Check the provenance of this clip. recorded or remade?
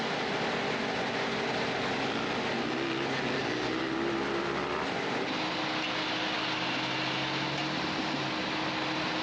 recorded